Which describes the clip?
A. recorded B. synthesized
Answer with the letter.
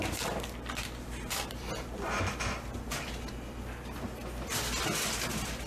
A